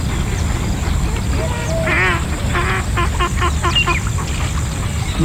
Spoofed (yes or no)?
no